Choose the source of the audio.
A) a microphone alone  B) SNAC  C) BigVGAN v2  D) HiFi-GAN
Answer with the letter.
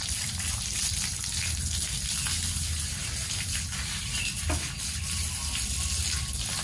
A